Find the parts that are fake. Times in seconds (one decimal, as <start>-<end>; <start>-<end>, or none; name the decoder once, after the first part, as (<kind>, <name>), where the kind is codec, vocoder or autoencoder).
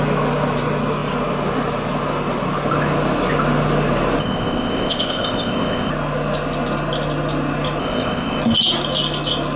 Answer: 4.2-5.9 (codec, ZipCodec); 7.8-8.4